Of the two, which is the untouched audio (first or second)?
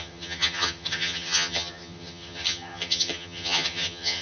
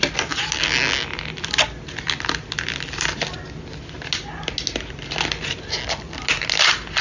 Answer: second